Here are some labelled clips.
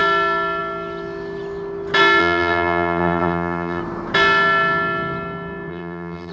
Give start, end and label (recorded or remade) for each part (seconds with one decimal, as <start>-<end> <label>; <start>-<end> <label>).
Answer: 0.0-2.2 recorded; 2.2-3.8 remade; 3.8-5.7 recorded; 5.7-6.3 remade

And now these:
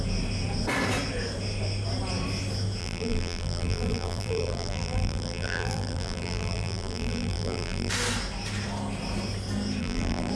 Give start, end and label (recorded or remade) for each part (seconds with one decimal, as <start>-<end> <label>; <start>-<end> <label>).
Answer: 0.0-2.8 recorded; 2.8-7.9 remade; 7.9-9.8 recorded; 9.8-10.3 remade

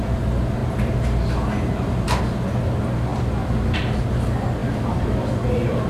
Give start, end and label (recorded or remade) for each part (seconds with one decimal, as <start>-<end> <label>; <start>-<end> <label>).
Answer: 0.0-3.1 recorded; 3.1-4.1 remade; 4.1-5.9 recorded

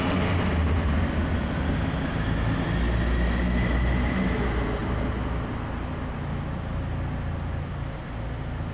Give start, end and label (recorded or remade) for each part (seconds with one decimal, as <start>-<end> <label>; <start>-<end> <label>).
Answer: 0.0-8.7 recorded

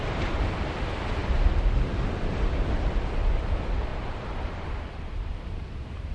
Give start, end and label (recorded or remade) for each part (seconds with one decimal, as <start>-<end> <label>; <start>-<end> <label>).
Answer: 0.0-3.9 recorded; 3.9-6.1 remade

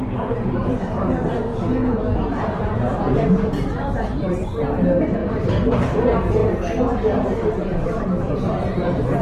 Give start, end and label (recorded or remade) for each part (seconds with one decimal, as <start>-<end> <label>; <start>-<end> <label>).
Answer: 0.0-1.5 remade; 1.5-2.6 recorded; 2.6-9.2 remade